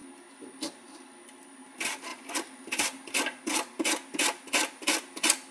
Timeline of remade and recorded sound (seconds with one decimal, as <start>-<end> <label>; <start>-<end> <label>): 0.0-2.1 recorded; 2.1-3.2 remade; 3.2-5.5 recorded